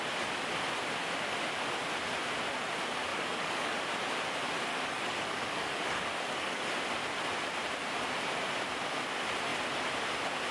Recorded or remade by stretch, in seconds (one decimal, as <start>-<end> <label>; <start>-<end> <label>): 0.0-3.1 recorded; 3.1-3.8 remade; 3.8-4.7 recorded; 4.7-6.6 remade; 6.6-10.5 recorded